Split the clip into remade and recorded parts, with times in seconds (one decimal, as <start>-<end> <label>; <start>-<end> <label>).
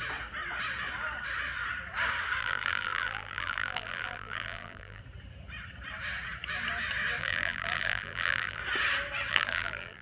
0.0-2.4 recorded; 2.4-5.0 remade; 5.0-7.2 recorded; 7.2-8.6 remade; 8.6-9.3 recorded; 9.3-10.0 remade